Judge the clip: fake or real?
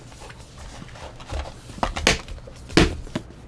real